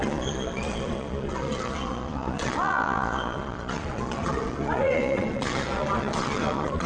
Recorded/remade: remade